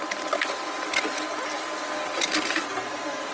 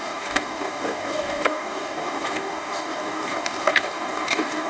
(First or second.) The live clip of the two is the first